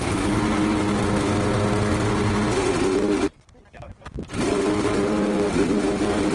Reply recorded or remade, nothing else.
recorded